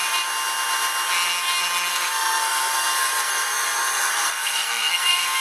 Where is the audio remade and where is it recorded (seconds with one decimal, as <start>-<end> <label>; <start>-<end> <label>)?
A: 0.0-1.9 recorded; 1.9-5.4 remade